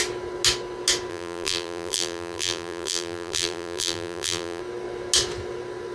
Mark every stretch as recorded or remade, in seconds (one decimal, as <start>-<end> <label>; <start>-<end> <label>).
0.0-1.1 recorded; 1.1-4.6 remade; 4.6-5.9 recorded